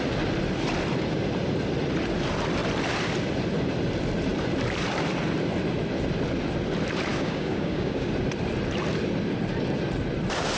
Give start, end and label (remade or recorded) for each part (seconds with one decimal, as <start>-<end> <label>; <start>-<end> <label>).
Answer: 0.0-7.1 recorded; 7.1-8.1 remade; 8.1-10.6 recorded